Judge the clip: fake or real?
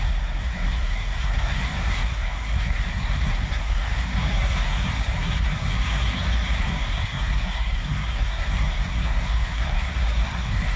fake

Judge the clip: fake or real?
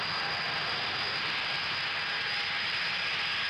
real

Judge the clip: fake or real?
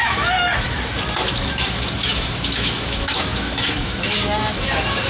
fake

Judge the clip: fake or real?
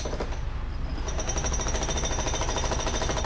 real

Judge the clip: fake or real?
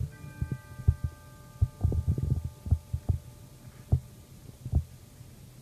real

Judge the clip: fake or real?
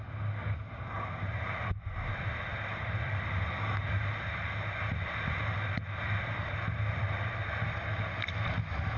real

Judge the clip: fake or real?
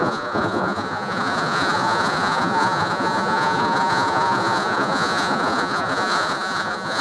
fake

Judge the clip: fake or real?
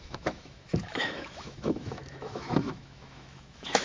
fake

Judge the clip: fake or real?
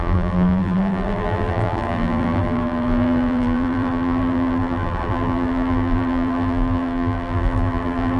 fake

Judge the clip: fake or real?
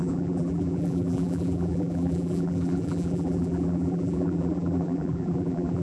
fake